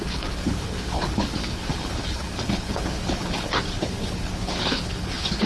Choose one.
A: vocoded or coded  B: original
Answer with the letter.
A